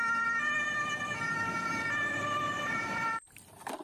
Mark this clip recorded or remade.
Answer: remade